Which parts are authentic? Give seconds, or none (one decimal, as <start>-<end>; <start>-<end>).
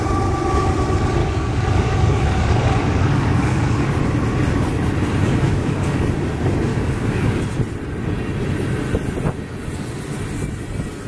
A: 0.0-1.2; 4.0-5.2; 6.1-6.7; 7.4-11.1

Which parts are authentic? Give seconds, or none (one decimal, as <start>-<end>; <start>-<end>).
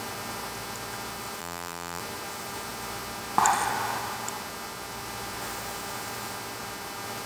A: 0.0-1.4; 2.0-7.3